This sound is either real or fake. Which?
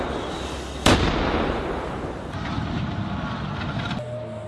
real